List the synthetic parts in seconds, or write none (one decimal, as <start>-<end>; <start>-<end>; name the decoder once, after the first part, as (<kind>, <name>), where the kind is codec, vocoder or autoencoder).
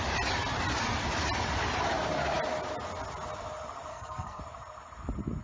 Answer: 3.9-4.4 (codec, SNAC)